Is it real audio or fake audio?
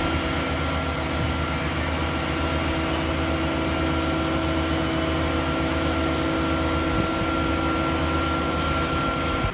real